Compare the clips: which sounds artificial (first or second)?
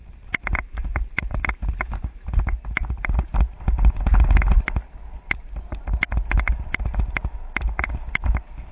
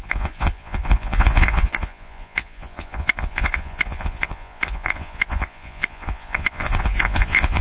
second